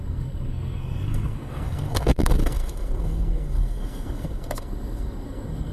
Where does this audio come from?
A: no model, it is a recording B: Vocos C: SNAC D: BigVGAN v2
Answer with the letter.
C